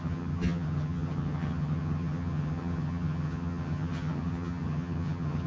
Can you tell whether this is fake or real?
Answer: fake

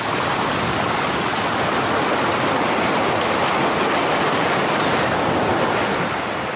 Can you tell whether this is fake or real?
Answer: real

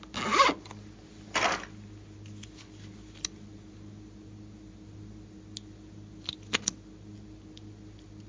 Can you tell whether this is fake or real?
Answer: real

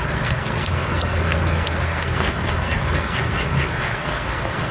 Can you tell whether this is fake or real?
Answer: fake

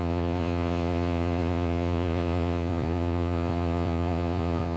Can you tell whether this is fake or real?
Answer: fake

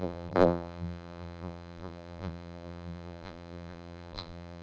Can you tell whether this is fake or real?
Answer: fake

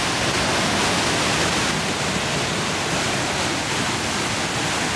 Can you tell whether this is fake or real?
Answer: real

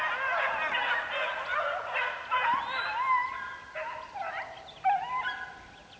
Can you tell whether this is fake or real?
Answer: real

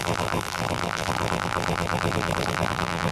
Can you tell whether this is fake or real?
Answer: fake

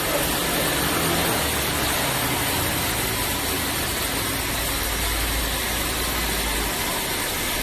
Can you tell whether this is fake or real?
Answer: real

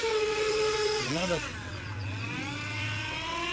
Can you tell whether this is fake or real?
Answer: fake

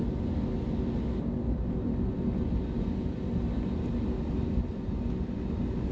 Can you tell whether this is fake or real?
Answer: real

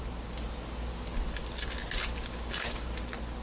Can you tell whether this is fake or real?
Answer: real